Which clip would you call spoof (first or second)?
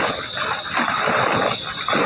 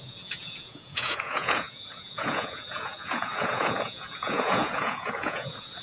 second